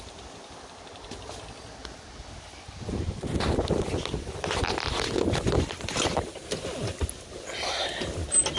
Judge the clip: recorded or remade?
recorded